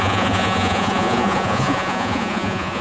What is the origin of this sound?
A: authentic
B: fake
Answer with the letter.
B